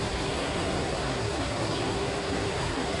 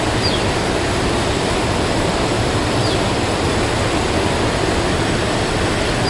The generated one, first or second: first